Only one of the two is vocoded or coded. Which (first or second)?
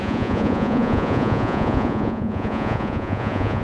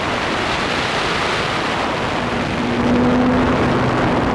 first